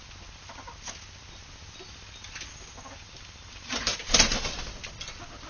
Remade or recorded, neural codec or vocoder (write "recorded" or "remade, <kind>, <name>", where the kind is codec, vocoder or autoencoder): recorded